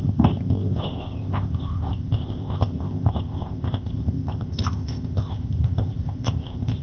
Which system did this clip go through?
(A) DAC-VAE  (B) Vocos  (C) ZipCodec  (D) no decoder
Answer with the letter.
C